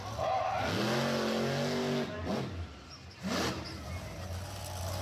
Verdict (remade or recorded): recorded